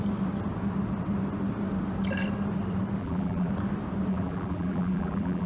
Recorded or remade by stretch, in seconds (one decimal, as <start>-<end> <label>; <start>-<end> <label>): 0.0-3.0 recorded; 3.0-3.5 remade; 3.5-4.1 recorded; 4.1-5.5 remade